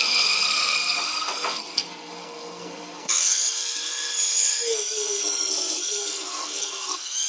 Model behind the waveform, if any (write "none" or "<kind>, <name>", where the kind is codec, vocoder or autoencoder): codec, SNAC